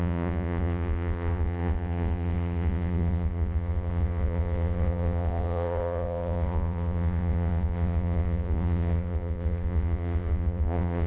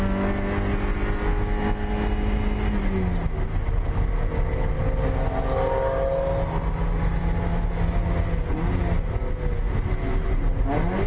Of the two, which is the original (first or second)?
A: second